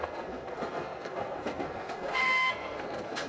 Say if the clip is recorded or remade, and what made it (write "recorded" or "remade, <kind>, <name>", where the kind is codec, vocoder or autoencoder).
remade, codec, SNAC